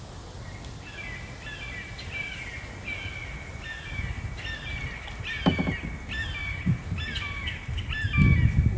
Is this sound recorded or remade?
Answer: recorded